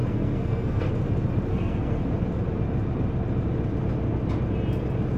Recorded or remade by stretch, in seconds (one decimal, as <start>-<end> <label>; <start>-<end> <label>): 0.0-0.9 remade; 0.9-1.5 recorded; 1.5-2.0 remade; 2.0-5.2 recorded